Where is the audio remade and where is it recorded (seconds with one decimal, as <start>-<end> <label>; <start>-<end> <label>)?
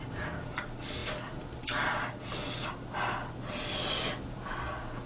0.0-5.1 recorded